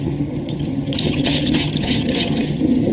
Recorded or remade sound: remade